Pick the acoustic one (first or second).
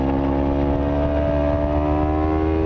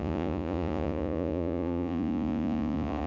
first